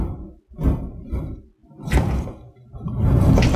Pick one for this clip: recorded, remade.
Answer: recorded